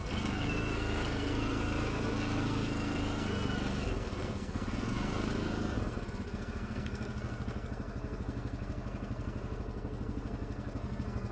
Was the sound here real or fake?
fake